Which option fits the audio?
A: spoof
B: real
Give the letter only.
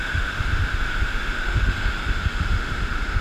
A